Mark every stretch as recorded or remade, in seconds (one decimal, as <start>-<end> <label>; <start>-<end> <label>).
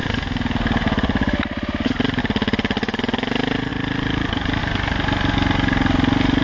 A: 0.0-6.4 recorded